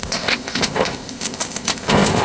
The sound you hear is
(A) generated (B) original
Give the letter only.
A